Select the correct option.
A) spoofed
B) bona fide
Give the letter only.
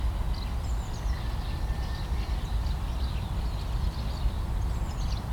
B